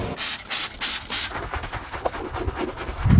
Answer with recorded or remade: recorded